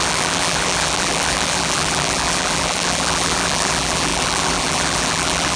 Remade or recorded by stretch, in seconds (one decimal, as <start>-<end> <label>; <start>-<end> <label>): 0.0-5.6 remade